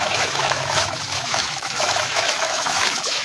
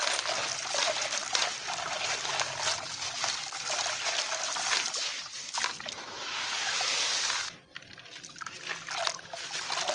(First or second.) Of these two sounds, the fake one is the first